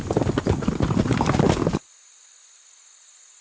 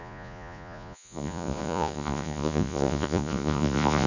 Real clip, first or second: first